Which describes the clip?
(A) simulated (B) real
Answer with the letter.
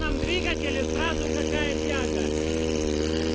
B